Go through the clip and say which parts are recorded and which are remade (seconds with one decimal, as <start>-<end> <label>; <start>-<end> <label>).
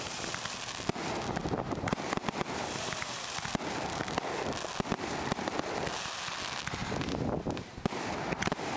0.0-8.8 recorded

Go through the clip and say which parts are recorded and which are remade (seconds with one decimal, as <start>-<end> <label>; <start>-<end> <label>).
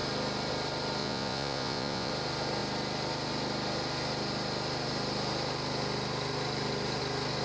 0.0-1.0 recorded; 1.0-2.1 remade; 2.1-7.4 recorded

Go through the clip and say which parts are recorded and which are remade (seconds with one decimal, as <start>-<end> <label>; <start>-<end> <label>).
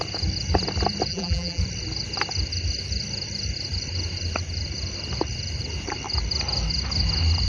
0.0-1.1 recorded; 1.1-1.6 remade; 1.6-7.5 recorded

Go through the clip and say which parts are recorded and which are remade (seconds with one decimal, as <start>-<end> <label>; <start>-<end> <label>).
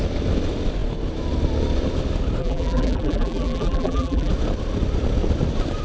0.0-2.4 recorded; 2.4-4.3 remade; 4.3-5.8 recorded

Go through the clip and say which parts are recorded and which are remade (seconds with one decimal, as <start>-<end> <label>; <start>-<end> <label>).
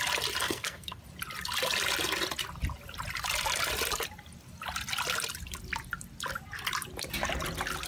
0.0-0.4 recorded; 0.4-1.0 remade; 1.0-7.9 recorded